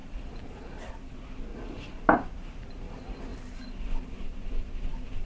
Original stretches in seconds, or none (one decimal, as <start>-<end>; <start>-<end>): 0.0-1.5; 2.0-5.2